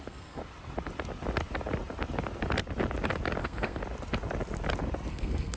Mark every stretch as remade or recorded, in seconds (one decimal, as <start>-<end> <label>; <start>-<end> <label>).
0.0-0.4 remade; 0.4-3.4 recorded; 3.4-3.8 remade; 3.8-5.1 recorded; 5.1-5.6 remade